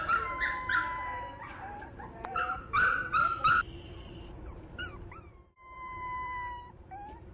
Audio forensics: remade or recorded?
remade